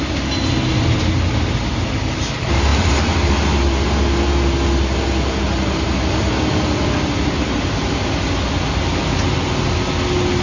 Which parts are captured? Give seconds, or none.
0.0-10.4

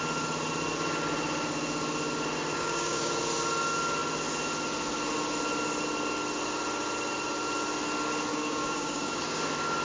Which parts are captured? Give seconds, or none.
0.0-2.5; 3.1-8.3; 9.4-9.8

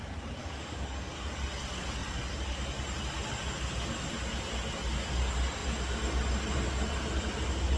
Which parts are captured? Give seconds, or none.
0.0-0.4; 1.1-7.8

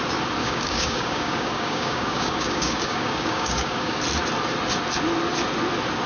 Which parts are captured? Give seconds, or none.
0.0-0.4; 4.0-6.1

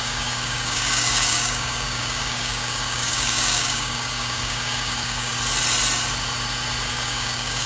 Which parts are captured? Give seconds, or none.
5.3-6.9

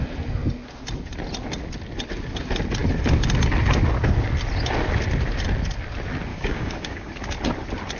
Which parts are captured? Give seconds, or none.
0.0-6.3; 7.1-8.0

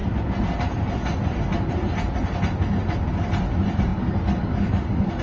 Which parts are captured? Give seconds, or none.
0.0-3.9

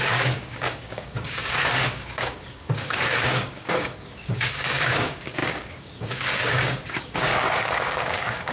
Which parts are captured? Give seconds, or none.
none